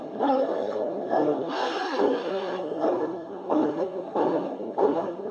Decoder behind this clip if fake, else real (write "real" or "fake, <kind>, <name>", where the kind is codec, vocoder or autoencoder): fake, codec, SNAC